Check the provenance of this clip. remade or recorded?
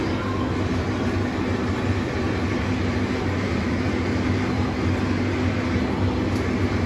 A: recorded